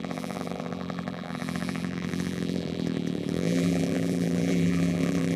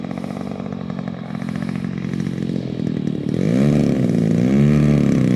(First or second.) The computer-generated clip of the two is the first